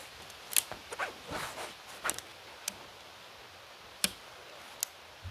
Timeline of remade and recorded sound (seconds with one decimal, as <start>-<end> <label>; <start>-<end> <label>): 0.0-5.3 recorded